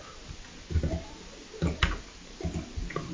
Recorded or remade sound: recorded